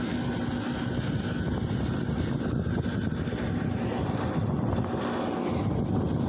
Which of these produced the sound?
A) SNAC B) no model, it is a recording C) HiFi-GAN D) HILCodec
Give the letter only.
B